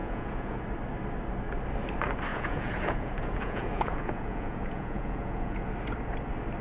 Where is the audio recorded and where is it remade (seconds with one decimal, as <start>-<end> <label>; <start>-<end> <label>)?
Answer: 0.0-0.6 remade; 0.6-2.3 recorded; 2.3-5.7 remade; 5.7-6.6 recorded